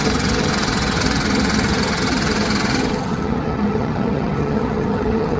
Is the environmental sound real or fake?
fake